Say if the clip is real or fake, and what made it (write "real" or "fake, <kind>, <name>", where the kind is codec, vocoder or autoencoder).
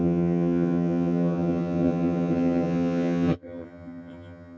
fake, vocoder, HiFi-GAN